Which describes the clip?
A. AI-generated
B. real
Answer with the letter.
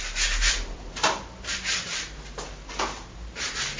A